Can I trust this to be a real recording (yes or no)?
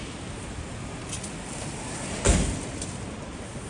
yes